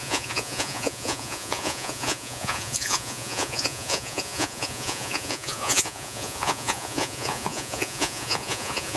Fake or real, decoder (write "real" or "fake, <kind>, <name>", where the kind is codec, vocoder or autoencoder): fake, vocoder, Vocos